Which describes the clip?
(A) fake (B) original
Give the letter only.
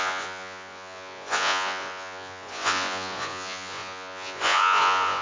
A